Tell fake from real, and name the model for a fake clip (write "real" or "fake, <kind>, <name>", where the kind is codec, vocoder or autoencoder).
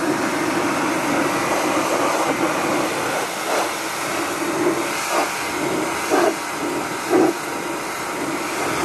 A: real